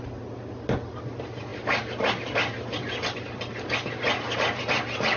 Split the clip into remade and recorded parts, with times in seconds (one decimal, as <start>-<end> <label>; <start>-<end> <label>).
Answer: 0.0-5.2 recorded